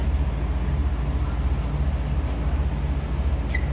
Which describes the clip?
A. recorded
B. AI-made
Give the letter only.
A